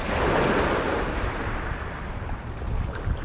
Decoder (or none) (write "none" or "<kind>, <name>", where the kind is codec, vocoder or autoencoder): none